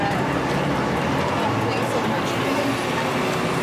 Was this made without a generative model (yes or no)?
yes